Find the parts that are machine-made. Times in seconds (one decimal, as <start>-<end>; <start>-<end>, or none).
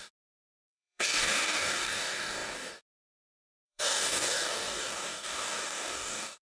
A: 0.0-6.5